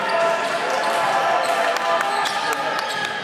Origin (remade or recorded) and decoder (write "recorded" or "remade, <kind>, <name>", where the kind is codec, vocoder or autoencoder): recorded